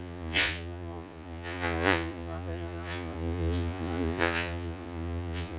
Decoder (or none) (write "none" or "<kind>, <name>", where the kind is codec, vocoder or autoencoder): vocoder, Vocos